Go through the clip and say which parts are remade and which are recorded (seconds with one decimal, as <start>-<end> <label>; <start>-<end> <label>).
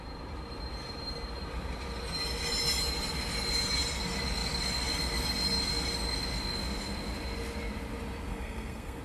0.0-8.3 recorded; 8.3-9.0 remade